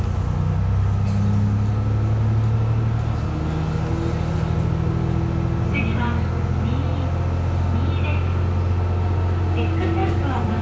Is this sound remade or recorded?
recorded